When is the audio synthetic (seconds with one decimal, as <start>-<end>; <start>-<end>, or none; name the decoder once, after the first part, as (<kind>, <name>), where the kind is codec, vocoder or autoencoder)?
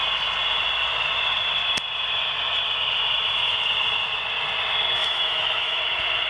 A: 5.0-5.8 (autoencoder, DAC-VAE)